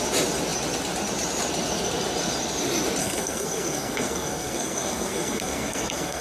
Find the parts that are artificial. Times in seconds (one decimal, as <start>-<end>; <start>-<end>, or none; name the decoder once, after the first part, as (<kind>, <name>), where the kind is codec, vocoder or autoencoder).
3.0-6.2 (codec, SNAC)